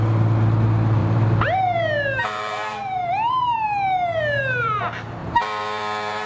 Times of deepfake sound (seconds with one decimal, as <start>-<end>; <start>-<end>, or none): 1.0-4.8; 5.2-6.3